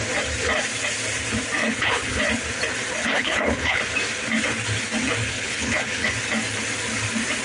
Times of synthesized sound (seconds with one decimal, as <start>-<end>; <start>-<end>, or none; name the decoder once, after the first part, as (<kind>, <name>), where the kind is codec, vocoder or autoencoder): 1.6-2.2 (codec, HILCodec); 3.0-3.8; 5.2-6.1